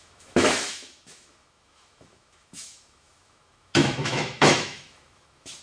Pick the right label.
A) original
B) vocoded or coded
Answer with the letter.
B